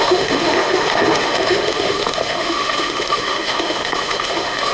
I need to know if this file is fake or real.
fake